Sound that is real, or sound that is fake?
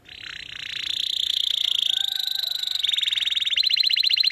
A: real